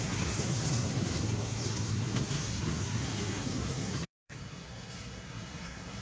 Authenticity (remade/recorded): remade